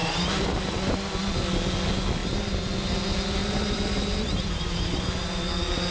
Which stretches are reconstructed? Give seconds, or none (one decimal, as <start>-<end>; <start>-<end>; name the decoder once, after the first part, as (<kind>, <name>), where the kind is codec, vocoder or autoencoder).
0.0-1.3 (vocoder, BigVGAN v2); 3.4-5.0